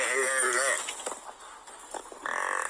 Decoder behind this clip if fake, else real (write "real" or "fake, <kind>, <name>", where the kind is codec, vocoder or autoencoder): real